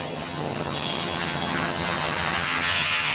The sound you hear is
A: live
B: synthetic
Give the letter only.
B